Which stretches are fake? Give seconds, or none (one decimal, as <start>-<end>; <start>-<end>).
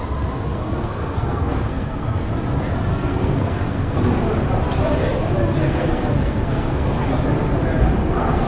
0.5-2.3; 2.9-4.0; 5.6-7.0; 8.0-8.5